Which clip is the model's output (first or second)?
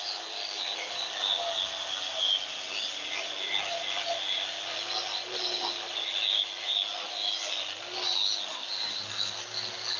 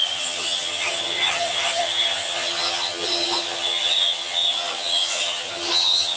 second